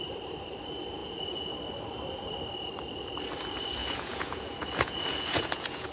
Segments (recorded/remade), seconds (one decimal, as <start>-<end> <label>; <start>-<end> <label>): 0.0-1.0 recorded; 1.0-1.5 remade; 1.5-3.8 recorded; 3.8-5.9 remade